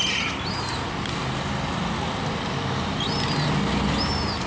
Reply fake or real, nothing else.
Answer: real